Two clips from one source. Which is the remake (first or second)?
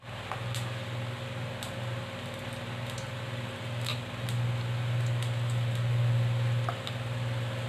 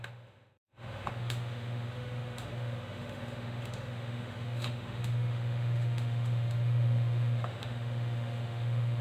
second